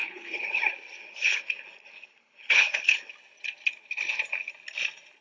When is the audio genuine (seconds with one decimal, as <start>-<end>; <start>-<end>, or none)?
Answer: 0.6-1.0; 3.1-5.2